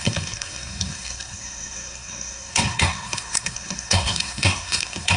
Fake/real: fake